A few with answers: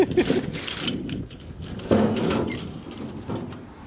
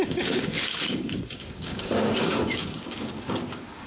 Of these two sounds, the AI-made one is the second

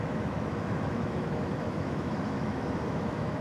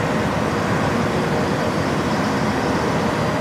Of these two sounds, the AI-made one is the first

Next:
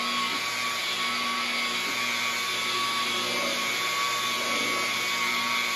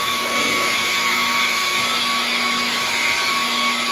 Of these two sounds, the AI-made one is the second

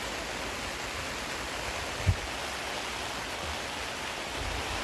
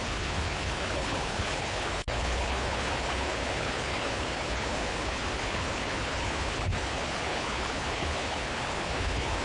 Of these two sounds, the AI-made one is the second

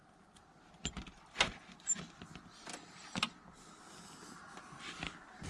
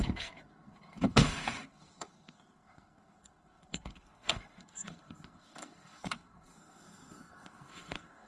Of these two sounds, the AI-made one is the second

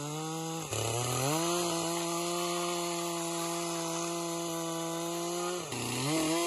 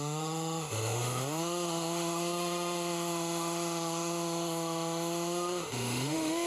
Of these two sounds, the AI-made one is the second